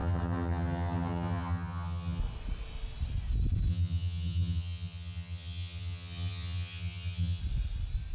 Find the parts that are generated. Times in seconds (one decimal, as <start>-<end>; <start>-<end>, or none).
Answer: 0.0-2.2; 3.7-7.4